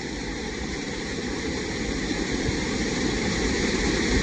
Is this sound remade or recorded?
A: remade